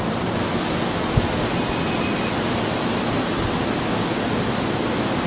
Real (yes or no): yes